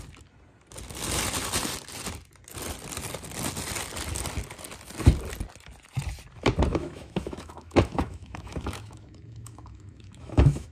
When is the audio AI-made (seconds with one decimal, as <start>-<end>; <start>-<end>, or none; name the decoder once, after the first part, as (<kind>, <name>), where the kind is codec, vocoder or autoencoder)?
6.7-10.7 (autoencoder, DAC-VAE)